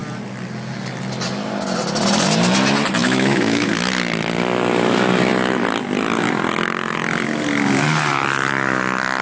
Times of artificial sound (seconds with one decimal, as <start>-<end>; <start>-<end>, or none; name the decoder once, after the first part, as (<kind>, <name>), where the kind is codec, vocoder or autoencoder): 3.0-3.7 (autoencoder, DAC-VAE)